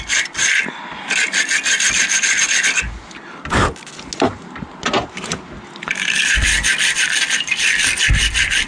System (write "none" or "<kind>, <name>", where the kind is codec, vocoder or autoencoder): none